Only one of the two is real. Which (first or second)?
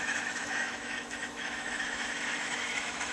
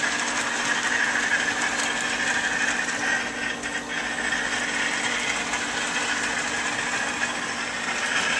second